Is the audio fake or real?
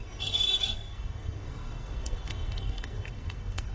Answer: fake